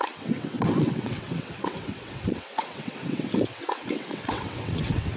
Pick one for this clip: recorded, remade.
remade